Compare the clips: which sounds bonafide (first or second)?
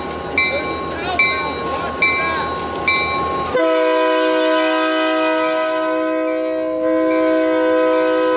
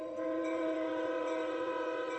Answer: first